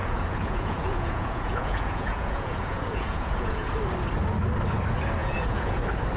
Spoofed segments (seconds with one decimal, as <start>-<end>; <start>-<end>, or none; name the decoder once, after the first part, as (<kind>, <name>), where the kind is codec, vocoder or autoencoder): 0.0-3.7 (vocoder, Vocos); 5.2-5.8